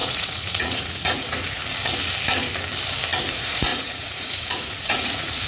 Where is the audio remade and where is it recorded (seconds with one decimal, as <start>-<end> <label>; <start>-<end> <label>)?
0.0-1.6 remade; 1.6-3.3 recorded; 3.3-5.5 remade